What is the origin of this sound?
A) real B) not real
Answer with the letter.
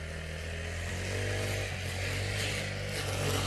A